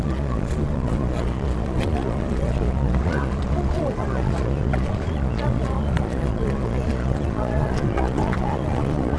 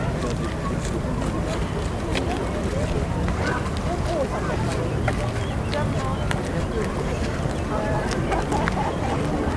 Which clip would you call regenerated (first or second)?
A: first